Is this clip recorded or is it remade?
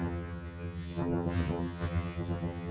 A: remade